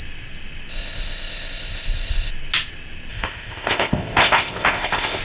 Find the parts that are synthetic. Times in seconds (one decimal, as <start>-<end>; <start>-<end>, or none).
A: 0.7-2.3; 3.1-5.2